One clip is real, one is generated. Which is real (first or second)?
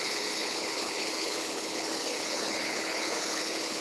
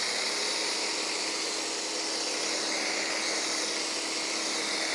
second